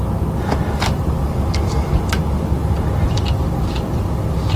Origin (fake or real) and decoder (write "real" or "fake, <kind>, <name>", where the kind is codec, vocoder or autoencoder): real